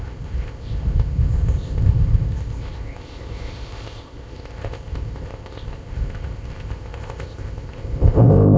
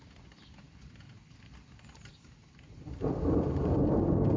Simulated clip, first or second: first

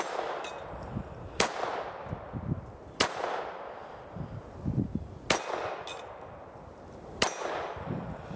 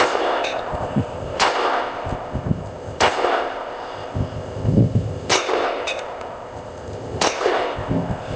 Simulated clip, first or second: second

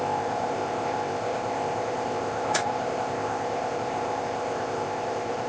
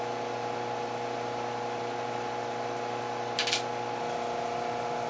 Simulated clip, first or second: first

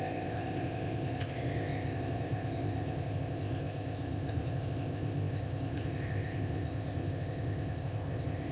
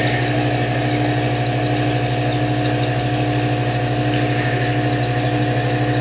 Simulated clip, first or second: first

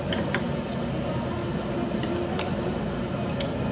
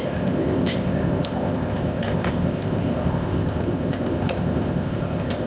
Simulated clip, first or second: second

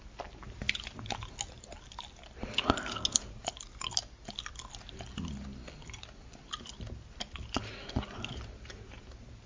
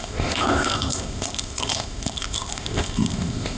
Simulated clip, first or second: second